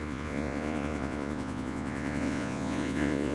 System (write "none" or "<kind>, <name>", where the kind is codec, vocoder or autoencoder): vocoder, Vocos